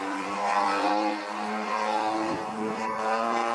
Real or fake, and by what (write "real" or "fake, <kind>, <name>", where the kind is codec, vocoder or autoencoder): fake, vocoder, Vocos